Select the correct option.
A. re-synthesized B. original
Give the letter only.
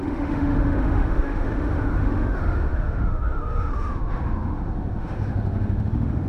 A